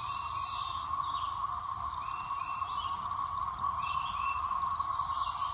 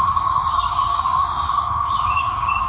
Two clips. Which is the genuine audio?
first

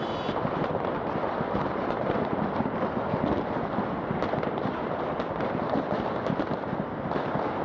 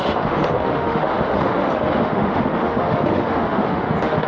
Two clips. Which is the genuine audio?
first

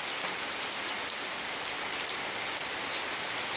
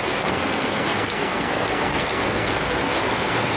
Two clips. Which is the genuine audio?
first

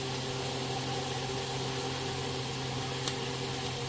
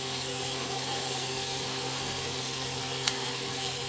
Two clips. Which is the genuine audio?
first